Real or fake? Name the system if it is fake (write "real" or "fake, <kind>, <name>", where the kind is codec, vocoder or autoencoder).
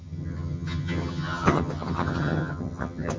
fake, vocoder, HiFi-GAN